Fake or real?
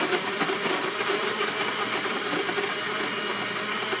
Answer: real